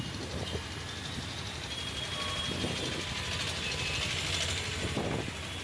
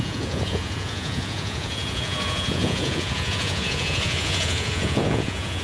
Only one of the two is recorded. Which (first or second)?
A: first